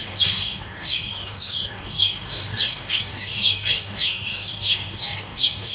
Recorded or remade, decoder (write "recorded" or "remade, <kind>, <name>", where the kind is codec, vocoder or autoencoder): remade, codec, DAC